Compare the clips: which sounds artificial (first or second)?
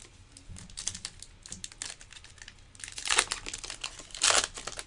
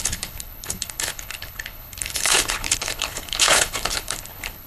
second